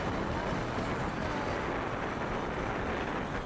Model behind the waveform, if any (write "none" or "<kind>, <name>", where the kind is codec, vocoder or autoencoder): none